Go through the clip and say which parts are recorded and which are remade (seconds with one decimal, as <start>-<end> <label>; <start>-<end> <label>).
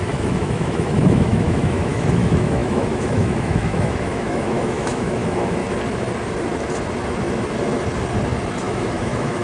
0.0-5.6 remade; 5.6-8.6 recorded; 8.6-9.4 remade